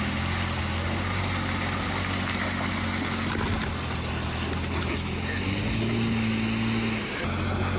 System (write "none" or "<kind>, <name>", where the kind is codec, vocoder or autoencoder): none